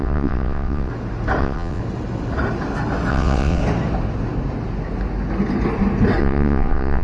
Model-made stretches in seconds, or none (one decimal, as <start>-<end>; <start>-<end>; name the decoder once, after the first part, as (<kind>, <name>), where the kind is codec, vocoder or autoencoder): 0.0-0.9 (vocoder, WaveNeXt); 1.4-1.8; 3.1-3.6; 6.2-7.0